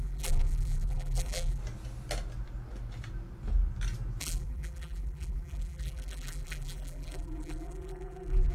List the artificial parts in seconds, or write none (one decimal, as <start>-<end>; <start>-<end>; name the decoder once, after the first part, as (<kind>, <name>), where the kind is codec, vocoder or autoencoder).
0.0-1.6 (vocoder, BigVGAN v2); 4.2-8.5